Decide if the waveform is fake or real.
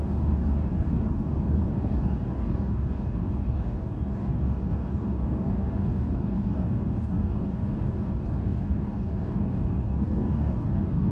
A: fake